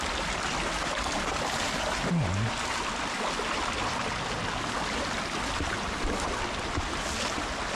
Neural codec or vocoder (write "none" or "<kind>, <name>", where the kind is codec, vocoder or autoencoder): none